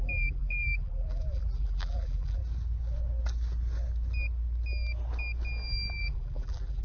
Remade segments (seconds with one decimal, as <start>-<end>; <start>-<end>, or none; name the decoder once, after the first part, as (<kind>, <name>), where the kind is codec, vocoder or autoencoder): 0.0-2.4 (vocoder, BigVGAN v2); 6.0-6.8